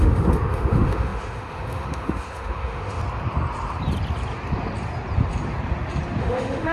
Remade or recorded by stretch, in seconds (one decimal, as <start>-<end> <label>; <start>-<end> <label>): 0.0-3.0 remade; 3.0-6.2 recorded; 6.2-6.7 remade